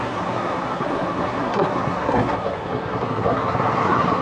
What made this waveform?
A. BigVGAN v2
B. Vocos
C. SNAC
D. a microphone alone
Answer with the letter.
C